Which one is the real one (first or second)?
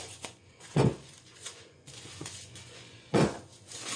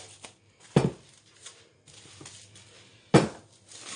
second